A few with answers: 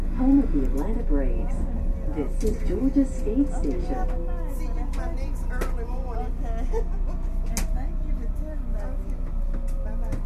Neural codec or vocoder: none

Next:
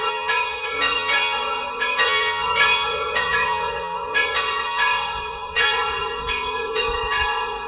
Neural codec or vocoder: vocoder, Vocos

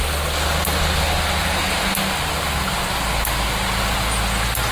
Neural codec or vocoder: none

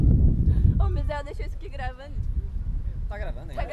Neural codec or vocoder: none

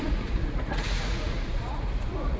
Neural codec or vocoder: vocoder, Vocos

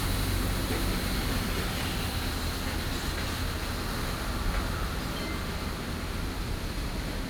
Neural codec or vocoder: none